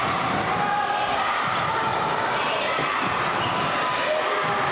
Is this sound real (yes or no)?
yes